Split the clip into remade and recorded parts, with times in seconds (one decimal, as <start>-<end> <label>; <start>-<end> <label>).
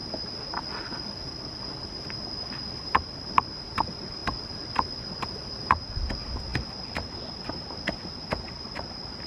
0.0-9.3 recorded